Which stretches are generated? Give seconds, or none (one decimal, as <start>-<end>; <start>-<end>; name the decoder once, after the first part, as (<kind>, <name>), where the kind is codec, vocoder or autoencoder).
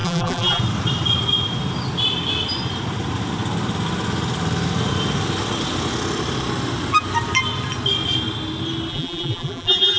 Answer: 0.0-0.6 (vocoder, BigVGAN v2); 8.9-10.0